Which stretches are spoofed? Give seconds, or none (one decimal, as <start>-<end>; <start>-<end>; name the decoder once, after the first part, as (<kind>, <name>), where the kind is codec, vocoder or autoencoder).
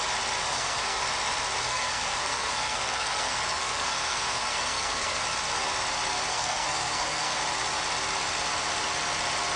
0.5-1.0 (codec, SNAC); 1.7-5.2; 6.3-7.4